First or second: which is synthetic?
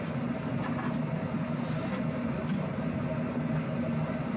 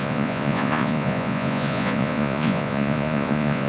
second